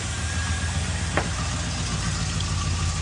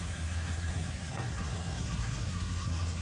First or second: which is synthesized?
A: second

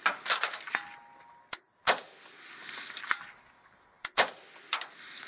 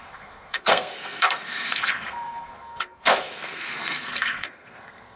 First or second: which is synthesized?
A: second